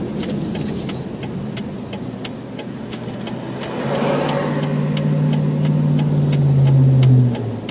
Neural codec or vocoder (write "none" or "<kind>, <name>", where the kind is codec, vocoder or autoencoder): none